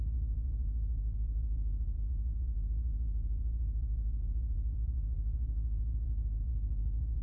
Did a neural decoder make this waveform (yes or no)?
yes